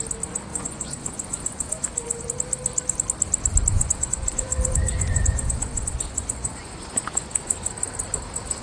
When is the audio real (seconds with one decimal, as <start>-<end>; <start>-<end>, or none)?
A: 0.0-0.5; 2.2-3.7; 7.7-8.6